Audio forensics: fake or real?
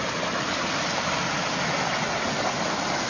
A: real